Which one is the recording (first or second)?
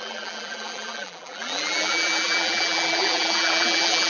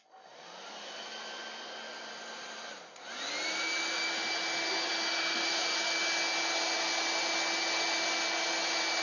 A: second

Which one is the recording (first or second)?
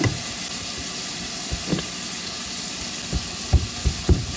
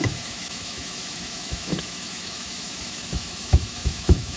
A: first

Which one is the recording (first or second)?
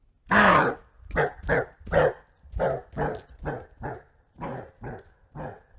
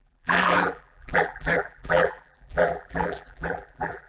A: first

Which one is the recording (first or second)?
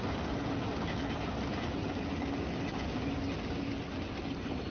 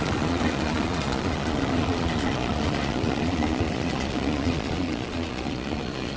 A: first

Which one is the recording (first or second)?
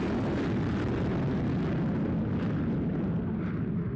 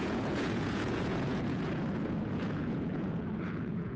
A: first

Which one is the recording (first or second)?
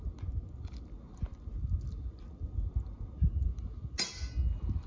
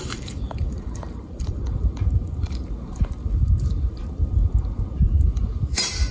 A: first